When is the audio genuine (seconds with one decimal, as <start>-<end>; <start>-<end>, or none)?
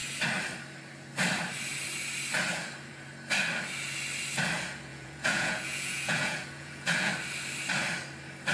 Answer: 0.0-4.9; 7.1-8.5